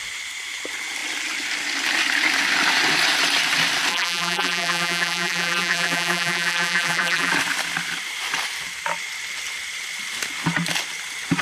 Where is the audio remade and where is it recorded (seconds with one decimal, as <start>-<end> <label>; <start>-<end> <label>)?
0.0-3.9 recorded; 3.9-7.3 remade; 7.3-11.4 recorded